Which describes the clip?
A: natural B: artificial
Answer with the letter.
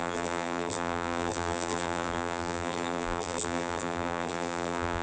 B